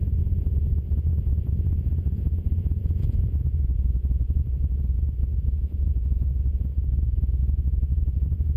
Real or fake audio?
fake